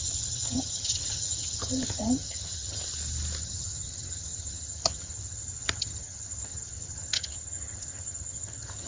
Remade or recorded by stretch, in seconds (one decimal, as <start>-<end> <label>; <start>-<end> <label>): 0.0-2.8 remade; 2.8-3.4 recorded; 3.4-8.9 remade